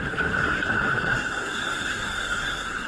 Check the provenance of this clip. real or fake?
fake